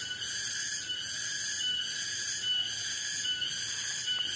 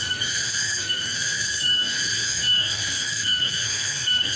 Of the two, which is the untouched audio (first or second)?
first